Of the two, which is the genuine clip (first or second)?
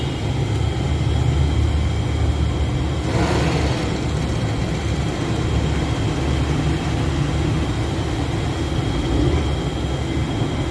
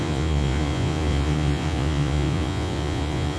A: first